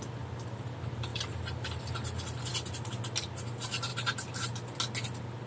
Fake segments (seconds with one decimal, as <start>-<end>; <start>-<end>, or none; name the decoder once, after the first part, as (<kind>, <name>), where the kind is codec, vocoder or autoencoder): none